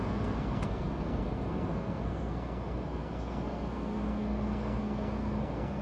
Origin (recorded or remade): remade